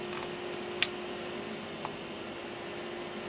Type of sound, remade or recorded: recorded